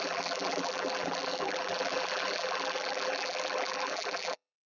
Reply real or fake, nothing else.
fake